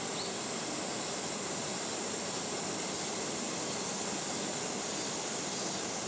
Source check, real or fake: real